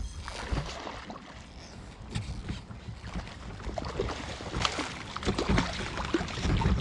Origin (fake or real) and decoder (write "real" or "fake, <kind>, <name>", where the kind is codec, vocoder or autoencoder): real